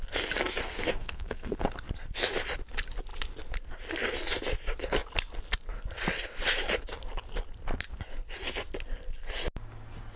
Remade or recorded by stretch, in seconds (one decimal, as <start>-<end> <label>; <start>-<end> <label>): 0.0-0.6 recorded; 0.6-1.7 remade; 1.7-10.2 recorded